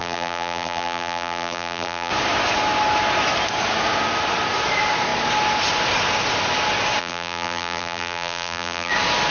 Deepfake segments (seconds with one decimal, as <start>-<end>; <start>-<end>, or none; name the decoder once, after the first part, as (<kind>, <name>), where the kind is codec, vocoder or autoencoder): 0.0-2.1 (vocoder, BigVGAN v2); 7.0-8.9